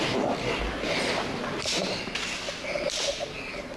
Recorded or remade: recorded